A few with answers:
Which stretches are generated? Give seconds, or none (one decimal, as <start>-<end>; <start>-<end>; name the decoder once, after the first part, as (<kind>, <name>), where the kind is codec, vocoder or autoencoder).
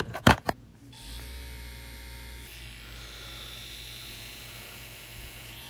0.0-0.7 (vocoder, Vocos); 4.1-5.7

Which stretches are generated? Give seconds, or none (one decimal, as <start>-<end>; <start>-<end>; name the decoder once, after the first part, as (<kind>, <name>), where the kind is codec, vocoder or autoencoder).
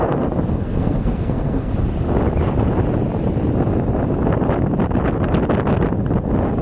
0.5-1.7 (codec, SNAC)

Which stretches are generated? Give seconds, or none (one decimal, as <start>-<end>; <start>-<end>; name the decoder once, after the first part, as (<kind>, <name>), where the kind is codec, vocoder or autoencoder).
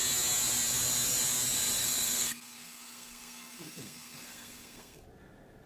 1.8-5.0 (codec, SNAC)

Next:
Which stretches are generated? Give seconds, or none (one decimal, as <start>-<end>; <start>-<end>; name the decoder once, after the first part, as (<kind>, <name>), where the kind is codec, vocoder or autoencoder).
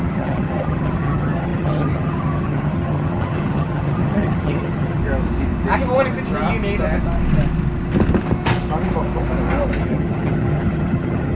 0.0-5.0 (vocoder, HiFi-GAN); 9.8-11.3